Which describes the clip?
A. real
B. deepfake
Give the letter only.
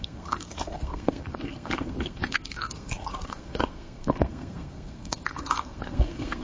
B